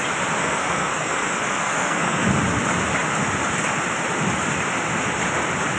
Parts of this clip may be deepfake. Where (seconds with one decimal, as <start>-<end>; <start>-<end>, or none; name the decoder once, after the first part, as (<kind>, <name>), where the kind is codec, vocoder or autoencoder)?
0.4-2.3 (codec, SNAC)